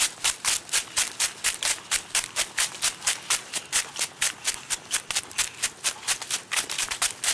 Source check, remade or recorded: recorded